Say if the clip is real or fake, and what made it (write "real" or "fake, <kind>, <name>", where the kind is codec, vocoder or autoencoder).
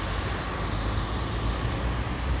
real